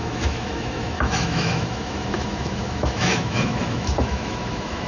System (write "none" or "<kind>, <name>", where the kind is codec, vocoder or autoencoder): autoencoder, DAC-VAE